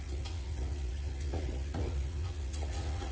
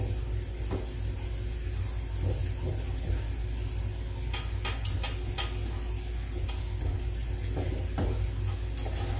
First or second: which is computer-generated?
first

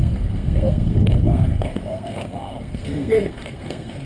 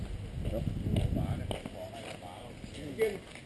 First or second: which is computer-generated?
first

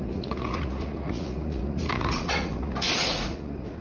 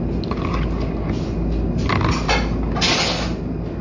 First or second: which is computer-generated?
first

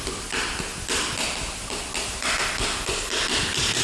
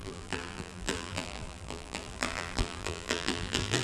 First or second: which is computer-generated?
second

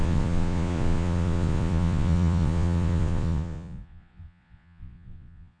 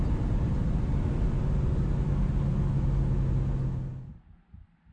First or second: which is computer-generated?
first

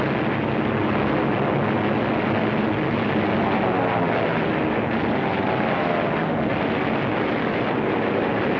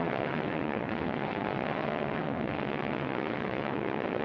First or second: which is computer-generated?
second